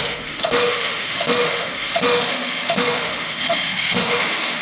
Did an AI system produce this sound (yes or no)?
yes